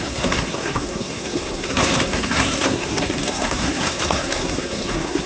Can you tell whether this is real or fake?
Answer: fake